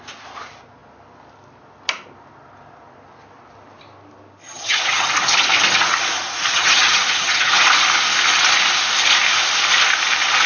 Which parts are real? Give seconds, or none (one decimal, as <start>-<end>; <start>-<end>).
0.0-4.4; 5.1-6.5; 7.5-10.5